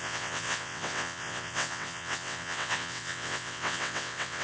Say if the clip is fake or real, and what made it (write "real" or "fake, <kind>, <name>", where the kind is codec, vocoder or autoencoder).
fake, vocoder, WaveNeXt